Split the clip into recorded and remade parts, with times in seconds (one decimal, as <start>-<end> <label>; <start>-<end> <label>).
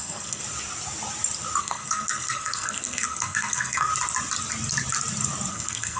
0.0-0.4 remade; 0.4-1.6 recorded; 1.6-3.9 remade; 3.9-5.5 recorded; 5.5-6.0 remade